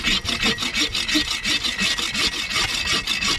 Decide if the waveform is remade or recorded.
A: recorded